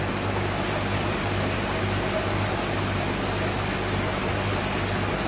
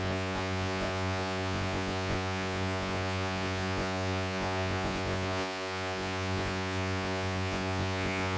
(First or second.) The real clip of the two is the first